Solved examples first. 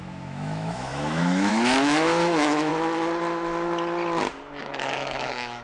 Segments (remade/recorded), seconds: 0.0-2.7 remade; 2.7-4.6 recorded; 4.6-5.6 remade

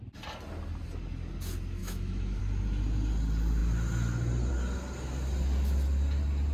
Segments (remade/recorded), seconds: 0.0-1.8 recorded; 1.8-2.4 remade; 2.4-6.5 recorded

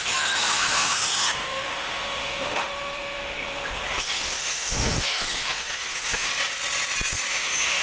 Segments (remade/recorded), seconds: 0.0-6.3 remade; 6.3-7.3 recorded; 7.3-7.8 remade

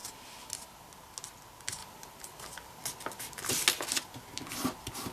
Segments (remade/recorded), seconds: 0.0-5.1 recorded

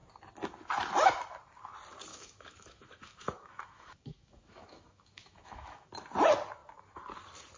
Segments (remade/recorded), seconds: 0.0-2.1 recorded; 2.1-5.9 remade; 5.9-7.6 recorded

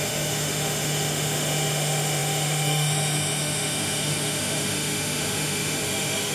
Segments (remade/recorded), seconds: 0.0-6.3 remade

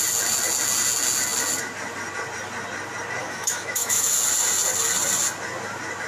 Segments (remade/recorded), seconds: 0.0-3.2 recorded; 3.2-4.1 remade; 4.1-6.1 recorded

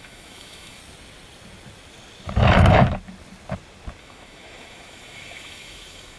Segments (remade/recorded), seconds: 0.0-0.8 remade; 0.8-4.0 recorded; 4.0-6.2 remade